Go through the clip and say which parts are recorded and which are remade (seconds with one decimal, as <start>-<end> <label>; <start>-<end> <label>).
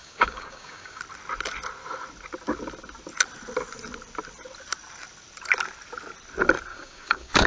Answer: 0.0-1.0 remade; 1.0-6.7 recorded; 6.7-7.5 remade